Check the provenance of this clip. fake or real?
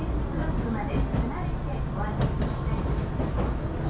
real